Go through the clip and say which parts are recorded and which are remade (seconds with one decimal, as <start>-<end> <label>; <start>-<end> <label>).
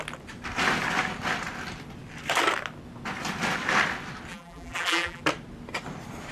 0.0-4.3 recorded; 4.3-5.2 remade; 5.2-6.3 recorded